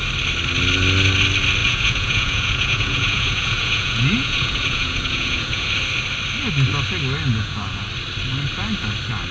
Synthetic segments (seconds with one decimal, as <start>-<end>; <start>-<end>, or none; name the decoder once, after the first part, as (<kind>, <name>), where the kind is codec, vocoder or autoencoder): 1.6-5.7 (vocoder, Vocos); 7.3-7.9